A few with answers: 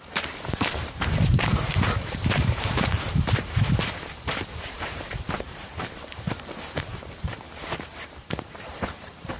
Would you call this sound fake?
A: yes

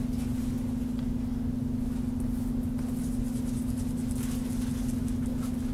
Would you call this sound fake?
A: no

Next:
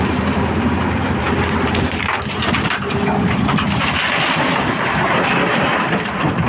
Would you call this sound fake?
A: yes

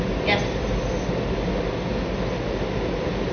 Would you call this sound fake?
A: no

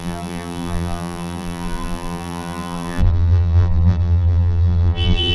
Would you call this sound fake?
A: yes